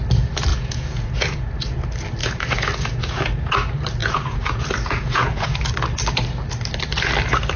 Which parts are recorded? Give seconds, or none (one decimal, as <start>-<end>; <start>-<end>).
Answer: 0.0-0.5; 1.5-2.2; 3.3-4.0; 5.6-7.6